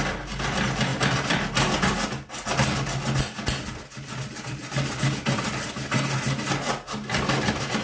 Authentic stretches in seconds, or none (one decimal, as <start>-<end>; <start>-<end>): 0.0-7.8